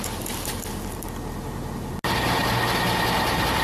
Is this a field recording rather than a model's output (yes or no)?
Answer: yes